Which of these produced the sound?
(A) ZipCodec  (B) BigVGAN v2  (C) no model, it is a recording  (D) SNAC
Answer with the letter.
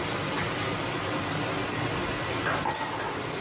C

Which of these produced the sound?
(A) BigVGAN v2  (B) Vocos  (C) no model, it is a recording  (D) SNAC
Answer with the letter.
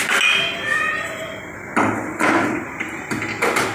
C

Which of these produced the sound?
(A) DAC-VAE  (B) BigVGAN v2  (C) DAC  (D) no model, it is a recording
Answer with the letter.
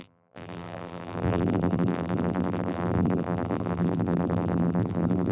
B